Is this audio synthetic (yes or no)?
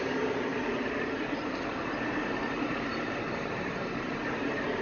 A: yes